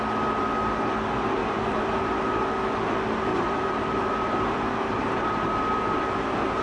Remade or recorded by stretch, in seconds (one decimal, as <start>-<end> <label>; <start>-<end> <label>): 0.0-1.4 recorded; 1.4-2.0 remade; 2.0-3.3 recorded; 3.3-5.5 remade; 5.5-6.6 recorded